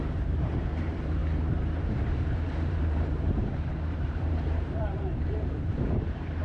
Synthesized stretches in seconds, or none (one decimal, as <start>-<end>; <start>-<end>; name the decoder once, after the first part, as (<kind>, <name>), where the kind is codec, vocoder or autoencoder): 0.0-1.2 (vocoder, BigVGAN v2); 1.8-6.4